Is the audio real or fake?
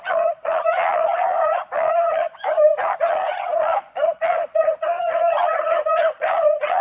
fake